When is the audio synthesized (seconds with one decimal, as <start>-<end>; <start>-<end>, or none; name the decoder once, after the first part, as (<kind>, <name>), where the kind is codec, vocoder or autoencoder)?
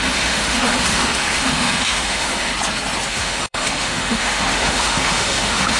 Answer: 0.0-2.5 (autoencoder, DAC-VAE); 3.1-5.8